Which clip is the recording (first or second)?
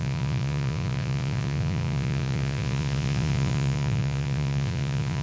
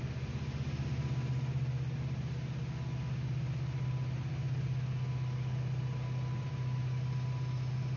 second